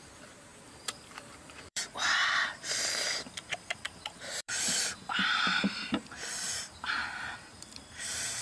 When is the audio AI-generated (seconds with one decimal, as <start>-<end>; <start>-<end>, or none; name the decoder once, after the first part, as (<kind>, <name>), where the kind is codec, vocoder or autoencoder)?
0.0-7.0 (vocoder, BigVGAN v2); 7.9-8.4